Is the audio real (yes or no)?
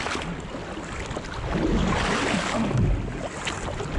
yes